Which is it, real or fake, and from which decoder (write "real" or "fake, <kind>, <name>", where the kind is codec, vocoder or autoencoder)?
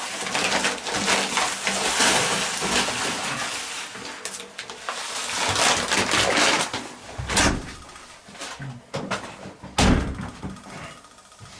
real